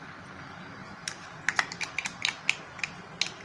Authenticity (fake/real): real